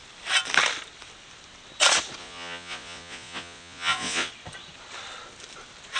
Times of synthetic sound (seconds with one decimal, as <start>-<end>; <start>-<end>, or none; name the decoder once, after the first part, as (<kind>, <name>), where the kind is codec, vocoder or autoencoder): 2.2-4.3 (vocoder, Vocos)